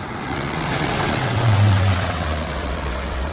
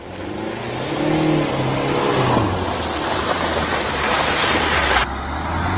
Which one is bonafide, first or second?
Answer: second